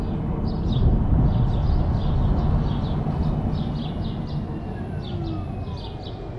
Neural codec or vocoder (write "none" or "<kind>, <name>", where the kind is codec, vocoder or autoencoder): none